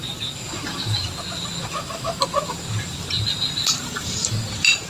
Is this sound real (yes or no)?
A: yes